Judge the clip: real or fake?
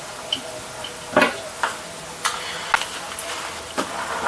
real